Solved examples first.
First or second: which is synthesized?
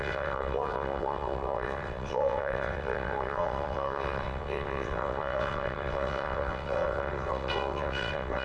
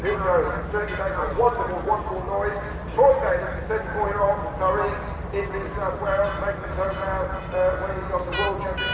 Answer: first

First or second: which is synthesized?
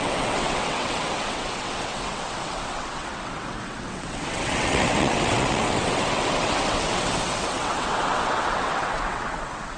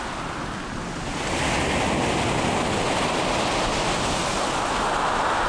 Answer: first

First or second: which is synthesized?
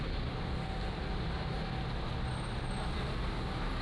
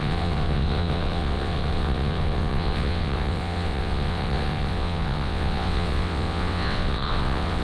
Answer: second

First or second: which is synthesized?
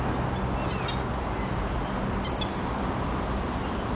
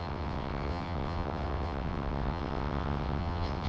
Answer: second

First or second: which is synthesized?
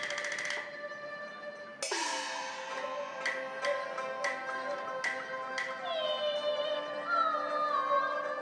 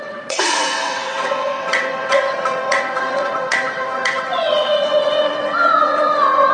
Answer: second